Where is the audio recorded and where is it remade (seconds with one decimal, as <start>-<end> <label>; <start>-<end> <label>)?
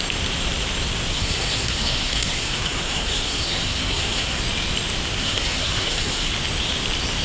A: 0.0-1.1 recorded; 1.1-4.4 remade; 4.4-5.2 recorded; 5.2-6.3 remade; 6.3-7.2 recorded